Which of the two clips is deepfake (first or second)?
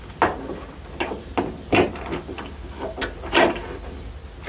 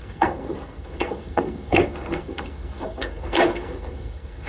second